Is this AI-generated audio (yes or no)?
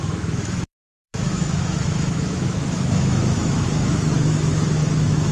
yes